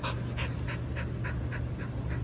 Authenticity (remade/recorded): recorded